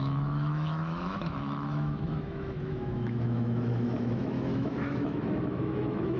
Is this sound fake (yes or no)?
yes